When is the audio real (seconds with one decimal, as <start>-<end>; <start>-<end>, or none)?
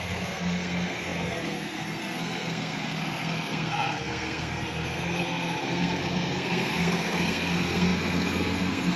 none